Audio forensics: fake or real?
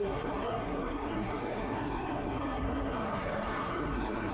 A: fake